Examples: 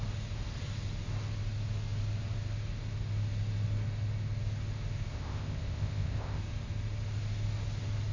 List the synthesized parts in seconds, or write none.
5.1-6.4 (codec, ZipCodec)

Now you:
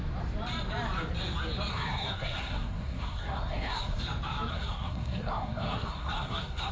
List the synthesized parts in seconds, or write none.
1.7-4.0 (codec, SNAC); 4.5-6.7

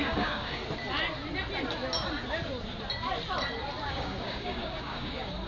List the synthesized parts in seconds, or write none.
0.0-0.6 (codec, DAC); 3.9-5.5

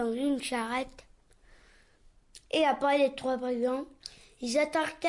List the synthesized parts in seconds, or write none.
none

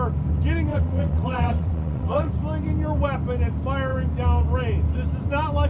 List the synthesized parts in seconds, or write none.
0.7-2.3 (vocoder, WaveNeXt)

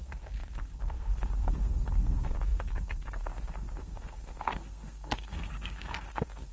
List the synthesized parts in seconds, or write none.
0.0-6.5 (codec, SNAC)

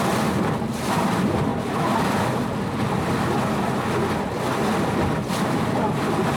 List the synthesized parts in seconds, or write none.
none

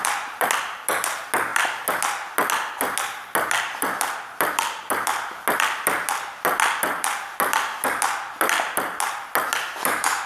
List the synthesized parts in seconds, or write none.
9.8-10.3 (autoencoder, DAC-VAE)